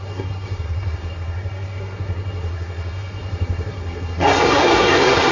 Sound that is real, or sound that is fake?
fake